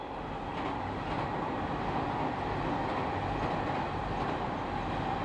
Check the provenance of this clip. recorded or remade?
recorded